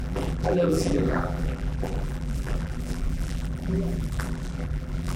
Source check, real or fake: fake